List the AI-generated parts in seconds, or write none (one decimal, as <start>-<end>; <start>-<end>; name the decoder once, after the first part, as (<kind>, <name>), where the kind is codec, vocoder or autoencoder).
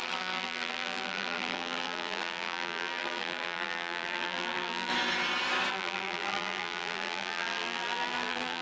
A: 0.0-4.9 (vocoder, BigVGAN v2); 5.7-8.6